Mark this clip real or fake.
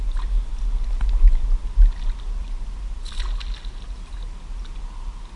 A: real